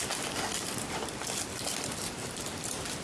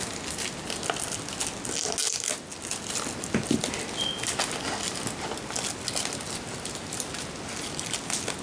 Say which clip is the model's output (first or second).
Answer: first